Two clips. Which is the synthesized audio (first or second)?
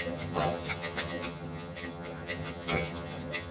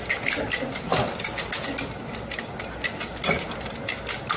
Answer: first